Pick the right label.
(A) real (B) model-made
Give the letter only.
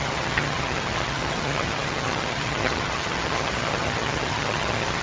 B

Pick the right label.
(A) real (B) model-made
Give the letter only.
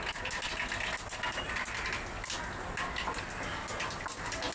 A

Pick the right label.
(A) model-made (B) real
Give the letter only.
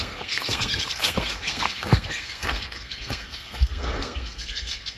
A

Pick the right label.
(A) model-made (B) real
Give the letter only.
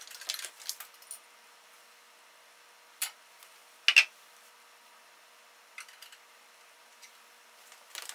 B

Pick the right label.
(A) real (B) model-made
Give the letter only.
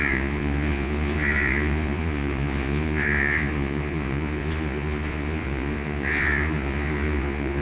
B